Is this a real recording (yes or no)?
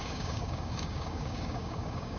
no